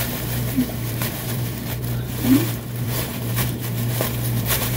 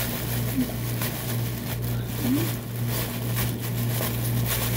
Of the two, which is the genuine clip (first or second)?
second